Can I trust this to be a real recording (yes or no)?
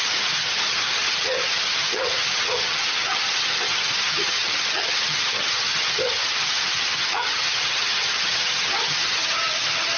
no